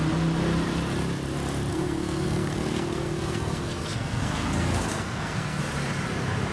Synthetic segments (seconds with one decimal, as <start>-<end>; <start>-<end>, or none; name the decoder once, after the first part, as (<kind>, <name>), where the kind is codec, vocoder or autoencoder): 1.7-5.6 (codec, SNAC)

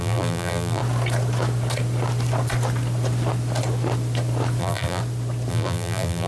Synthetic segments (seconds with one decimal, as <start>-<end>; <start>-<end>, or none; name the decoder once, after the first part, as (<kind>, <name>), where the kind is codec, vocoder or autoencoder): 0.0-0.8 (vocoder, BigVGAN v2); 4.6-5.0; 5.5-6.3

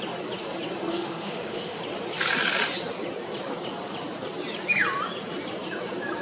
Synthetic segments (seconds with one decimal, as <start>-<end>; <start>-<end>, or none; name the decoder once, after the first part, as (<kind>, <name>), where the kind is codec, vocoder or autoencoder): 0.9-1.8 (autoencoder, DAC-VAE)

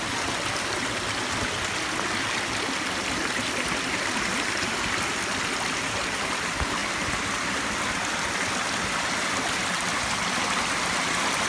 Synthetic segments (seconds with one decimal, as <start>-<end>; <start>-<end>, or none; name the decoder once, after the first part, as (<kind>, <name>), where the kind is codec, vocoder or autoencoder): none

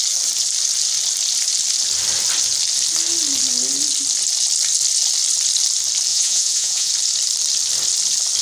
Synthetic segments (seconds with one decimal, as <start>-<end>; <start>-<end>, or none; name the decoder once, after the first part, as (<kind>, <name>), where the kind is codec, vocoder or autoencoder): 6.1-6.9 (vocoder, Vocos)

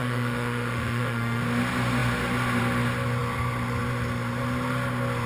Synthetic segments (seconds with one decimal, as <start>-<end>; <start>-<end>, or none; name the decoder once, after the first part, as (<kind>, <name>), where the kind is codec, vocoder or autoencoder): 0.0-1.4 (autoencoder, DAC-VAE)

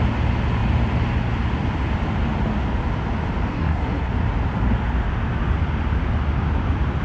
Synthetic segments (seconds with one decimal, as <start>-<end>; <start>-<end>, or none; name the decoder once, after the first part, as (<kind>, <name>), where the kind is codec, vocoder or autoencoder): 3.5-4.1 (codec, SNAC)

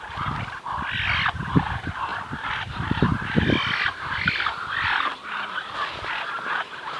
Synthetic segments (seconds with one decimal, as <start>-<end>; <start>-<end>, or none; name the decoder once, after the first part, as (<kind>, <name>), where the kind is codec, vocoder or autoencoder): none